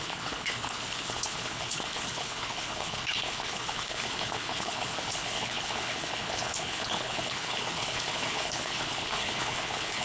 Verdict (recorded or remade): remade